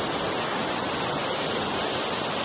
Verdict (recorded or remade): recorded